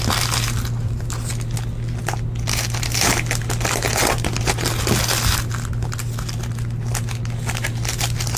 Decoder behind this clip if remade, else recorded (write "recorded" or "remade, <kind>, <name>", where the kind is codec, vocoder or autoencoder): recorded